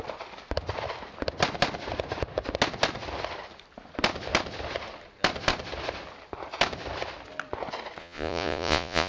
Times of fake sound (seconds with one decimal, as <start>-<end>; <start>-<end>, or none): 8.0-9.1